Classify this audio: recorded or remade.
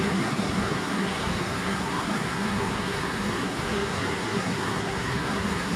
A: remade